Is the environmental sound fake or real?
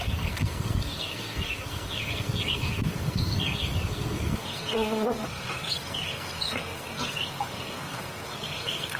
fake